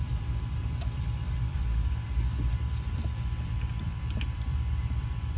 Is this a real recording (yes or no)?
no